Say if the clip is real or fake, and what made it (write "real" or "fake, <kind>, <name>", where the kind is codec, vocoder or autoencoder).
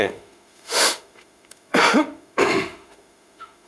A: fake, autoencoder, DAC-VAE